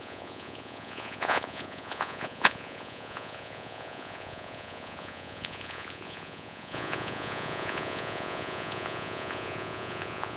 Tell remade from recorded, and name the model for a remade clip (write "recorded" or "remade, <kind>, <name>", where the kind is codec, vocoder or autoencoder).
remade, vocoder, Vocos